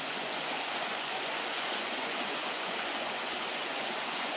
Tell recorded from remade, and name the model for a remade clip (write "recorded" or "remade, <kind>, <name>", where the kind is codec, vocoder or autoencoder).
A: remade, vocoder, Vocos